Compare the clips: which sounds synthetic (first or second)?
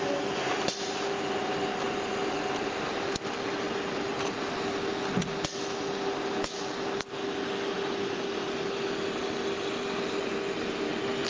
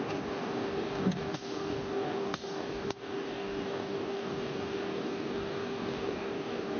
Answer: second